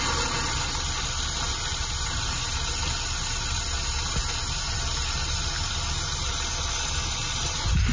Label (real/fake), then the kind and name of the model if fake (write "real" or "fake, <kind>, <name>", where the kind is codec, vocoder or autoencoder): real